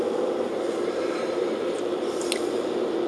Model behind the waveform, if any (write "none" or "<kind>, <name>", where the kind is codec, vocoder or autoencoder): vocoder, BigVGAN v2